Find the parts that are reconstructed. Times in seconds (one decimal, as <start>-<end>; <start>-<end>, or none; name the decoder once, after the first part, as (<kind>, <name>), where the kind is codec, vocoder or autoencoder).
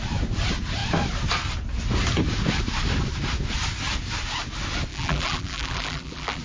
4.9-6.4 (vocoder, BigVGAN v2)